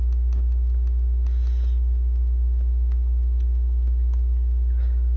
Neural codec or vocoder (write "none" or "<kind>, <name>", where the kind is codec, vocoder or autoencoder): none